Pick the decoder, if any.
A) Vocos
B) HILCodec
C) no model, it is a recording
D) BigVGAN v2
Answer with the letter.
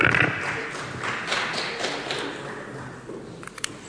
C